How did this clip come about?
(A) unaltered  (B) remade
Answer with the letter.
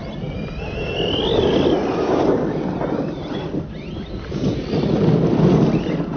A